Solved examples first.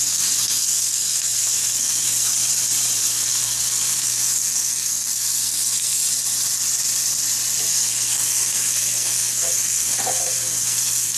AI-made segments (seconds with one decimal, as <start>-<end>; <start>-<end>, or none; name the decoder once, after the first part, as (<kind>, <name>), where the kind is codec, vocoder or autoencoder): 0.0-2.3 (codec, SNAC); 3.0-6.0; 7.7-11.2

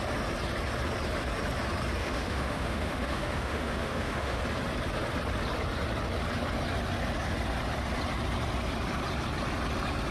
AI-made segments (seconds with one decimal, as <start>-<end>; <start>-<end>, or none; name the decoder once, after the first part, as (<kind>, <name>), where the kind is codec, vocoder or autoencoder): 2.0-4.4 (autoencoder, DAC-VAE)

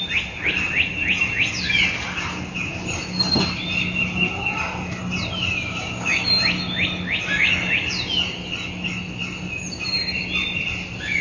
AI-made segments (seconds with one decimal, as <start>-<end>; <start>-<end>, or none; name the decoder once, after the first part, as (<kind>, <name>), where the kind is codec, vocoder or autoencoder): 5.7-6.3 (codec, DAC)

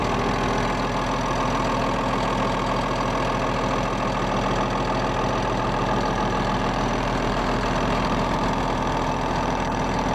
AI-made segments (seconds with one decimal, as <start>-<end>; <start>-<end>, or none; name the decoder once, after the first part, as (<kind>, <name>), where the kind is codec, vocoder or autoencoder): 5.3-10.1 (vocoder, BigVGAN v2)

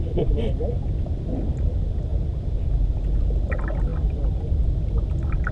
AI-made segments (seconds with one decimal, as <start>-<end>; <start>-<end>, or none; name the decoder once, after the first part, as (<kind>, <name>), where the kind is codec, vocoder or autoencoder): none